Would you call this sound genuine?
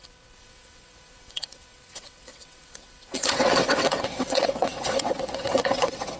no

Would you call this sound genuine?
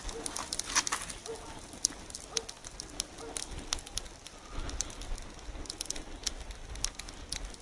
yes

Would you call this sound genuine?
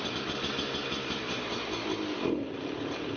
yes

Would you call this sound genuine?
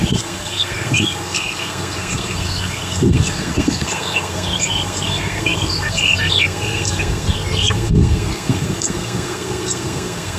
no